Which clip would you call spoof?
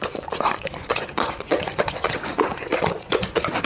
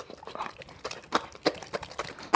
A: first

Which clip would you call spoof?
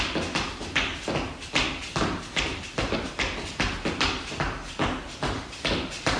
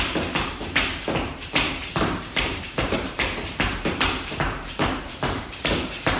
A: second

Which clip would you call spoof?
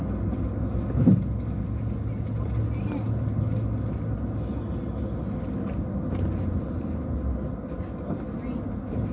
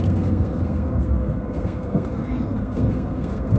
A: second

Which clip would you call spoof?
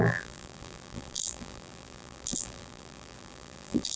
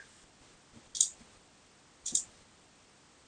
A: first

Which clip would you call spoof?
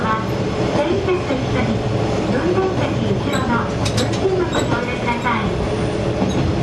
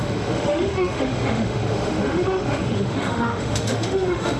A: second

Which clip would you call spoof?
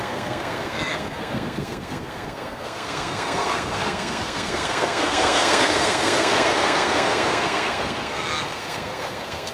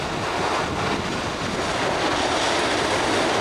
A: first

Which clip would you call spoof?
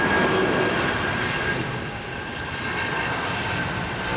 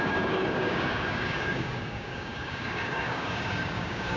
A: second